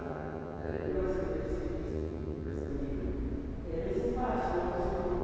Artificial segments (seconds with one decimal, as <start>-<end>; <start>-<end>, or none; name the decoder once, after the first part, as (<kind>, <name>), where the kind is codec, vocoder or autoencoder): 0.0-0.9 (vocoder, HiFi-GAN); 1.9-2.7